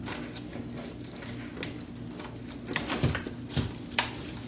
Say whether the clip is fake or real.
real